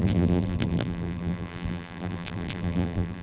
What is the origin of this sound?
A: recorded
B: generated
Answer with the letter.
B